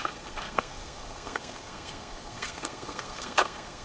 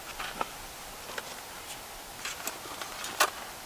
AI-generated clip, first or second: first